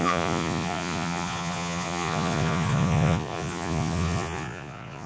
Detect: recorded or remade remade